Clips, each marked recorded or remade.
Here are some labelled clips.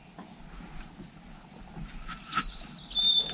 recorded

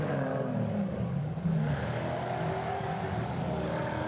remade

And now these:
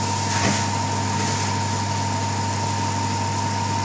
recorded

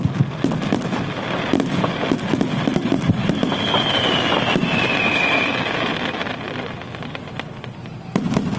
recorded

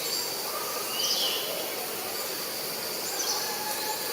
recorded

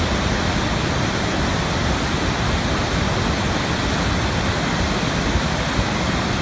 recorded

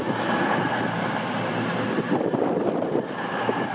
recorded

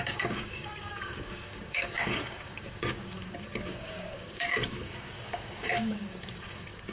remade